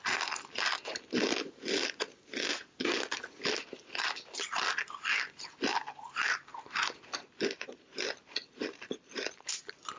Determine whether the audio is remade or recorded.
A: recorded